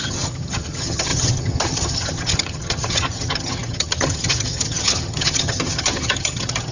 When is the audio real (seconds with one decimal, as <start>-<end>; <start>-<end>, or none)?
none